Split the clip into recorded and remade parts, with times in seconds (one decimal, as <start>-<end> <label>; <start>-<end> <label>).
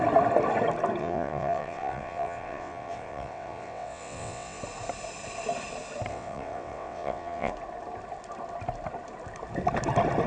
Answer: 0.0-1.0 recorded; 1.0-4.6 remade; 4.6-6.1 recorded; 6.1-7.5 remade; 7.5-10.3 recorded